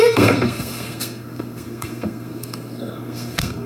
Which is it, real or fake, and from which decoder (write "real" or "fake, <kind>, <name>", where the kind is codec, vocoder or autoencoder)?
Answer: fake, codec, SNAC